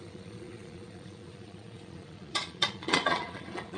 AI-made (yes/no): yes